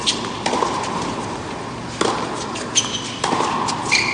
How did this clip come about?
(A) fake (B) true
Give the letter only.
B